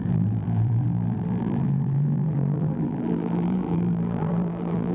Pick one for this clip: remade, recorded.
remade